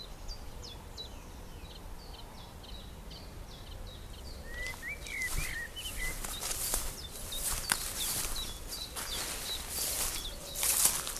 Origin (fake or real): real